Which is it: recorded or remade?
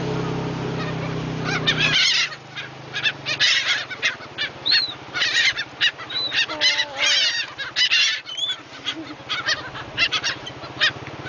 recorded